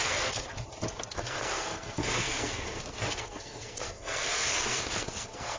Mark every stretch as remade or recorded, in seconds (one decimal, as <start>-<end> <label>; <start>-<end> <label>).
0.0-0.5 remade; 0.5-1.1 recorded; 1.1-5.6 remade